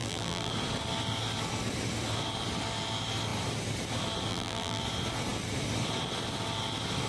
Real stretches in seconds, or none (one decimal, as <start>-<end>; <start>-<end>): 0.5-4.3; 4.8-7.1